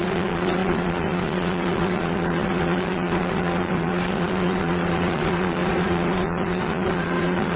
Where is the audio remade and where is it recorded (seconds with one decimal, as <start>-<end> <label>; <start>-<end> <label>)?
0.0-7.6 remade